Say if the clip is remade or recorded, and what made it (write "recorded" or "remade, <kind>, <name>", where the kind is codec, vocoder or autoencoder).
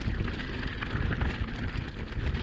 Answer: recorded